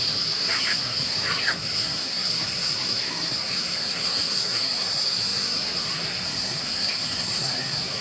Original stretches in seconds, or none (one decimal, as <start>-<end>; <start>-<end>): none